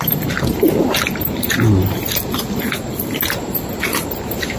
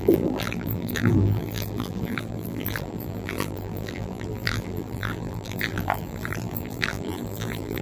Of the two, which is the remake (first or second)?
second